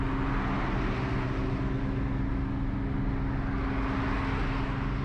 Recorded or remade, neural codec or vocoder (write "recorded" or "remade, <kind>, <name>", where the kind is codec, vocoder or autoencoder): recorded